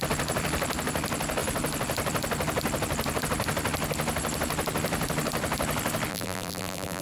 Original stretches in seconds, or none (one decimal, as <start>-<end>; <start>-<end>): 0.0-6.1